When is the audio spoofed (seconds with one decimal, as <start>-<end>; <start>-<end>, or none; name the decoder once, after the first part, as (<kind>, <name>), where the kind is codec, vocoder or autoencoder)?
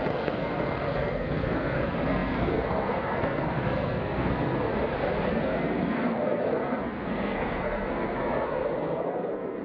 0.0-4.7 (codec, SNAC); 5.3-9.6